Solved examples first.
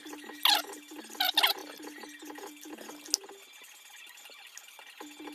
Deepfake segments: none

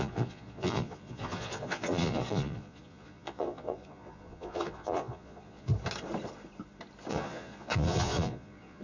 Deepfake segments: 0.0-5.7; 7.1-8.8

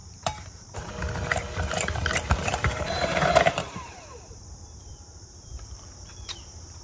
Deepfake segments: 0.0-0.9; 2.5-6.8

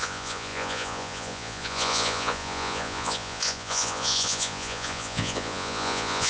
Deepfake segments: 0.0-6.3

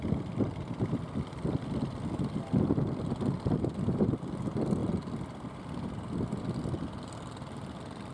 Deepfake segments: none

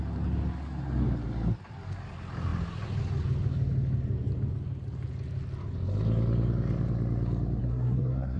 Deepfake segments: 7.6-8.4